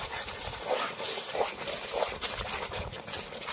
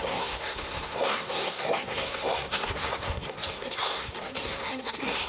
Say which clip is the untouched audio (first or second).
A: first